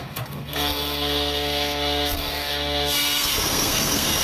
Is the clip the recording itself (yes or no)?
no